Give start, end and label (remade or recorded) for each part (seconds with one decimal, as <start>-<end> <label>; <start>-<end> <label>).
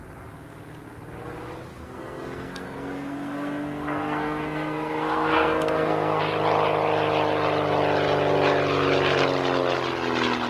0.0-1.7 recorded; 1.7-6.2 remade; 6.2-10.5 recorded